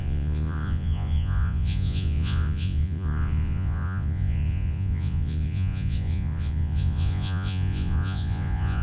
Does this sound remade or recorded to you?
remade